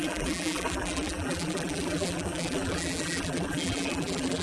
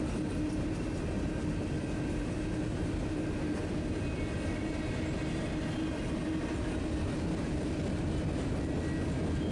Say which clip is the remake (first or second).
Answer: first